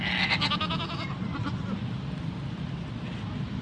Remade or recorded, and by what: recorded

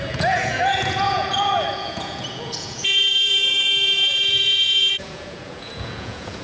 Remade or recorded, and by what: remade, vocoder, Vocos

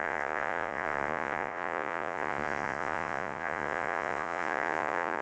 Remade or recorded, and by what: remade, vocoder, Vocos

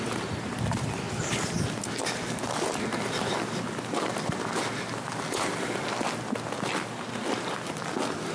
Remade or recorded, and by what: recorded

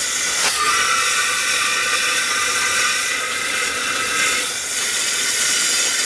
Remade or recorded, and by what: remade, vocoder, Vocos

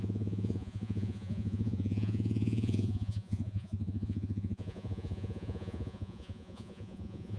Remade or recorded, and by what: remade, vocoder, Vocos